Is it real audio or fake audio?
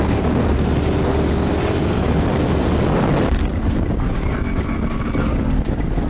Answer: real